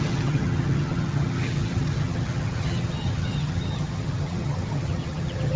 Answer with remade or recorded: remade